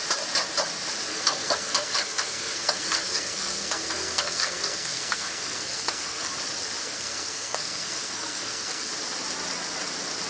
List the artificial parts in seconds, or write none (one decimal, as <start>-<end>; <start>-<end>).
1.1-6.3; 6.8-8.9